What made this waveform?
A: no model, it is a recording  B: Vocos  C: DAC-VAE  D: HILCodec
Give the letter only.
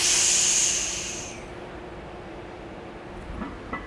A